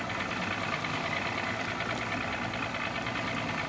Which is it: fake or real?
real